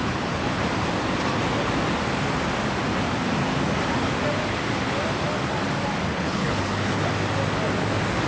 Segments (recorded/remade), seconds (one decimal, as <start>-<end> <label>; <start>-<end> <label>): 0.0-0.6 remade; 0.6-6.1 recorded; 6.1-7.1 remade; 7.1-8.3 recorded